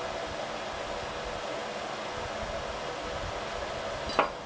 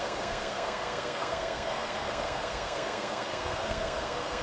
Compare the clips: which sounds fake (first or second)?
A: second